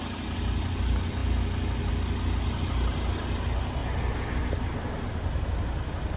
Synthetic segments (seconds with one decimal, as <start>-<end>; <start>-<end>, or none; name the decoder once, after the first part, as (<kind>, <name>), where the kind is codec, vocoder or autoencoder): none